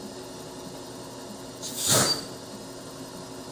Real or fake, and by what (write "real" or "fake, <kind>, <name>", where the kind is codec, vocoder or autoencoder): real